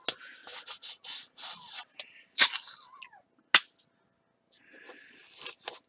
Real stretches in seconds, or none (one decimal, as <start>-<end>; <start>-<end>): 0.0-5.9